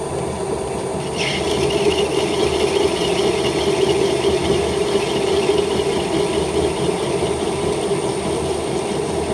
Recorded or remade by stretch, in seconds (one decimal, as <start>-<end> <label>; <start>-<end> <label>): 0.0-9.3 recorded